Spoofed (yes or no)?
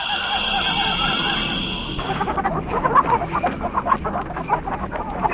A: no